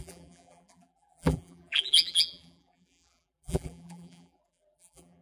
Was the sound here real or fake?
fake